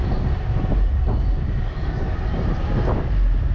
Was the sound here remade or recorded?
recorded